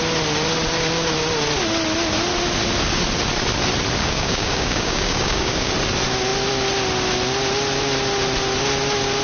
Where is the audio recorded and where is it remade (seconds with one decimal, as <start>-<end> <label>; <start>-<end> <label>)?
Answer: 0.0-4.0 recorded; 4.0-5.7 remade; 5.7-9.2 recorded